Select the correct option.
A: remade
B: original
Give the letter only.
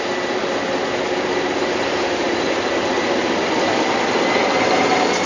B